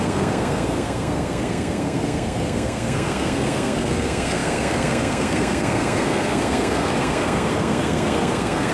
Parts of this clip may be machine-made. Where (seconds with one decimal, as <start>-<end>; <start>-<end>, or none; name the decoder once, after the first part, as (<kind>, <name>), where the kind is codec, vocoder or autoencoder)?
0.0-8.7 (codec, SNAC)